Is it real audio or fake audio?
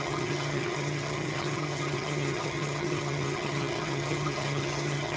fake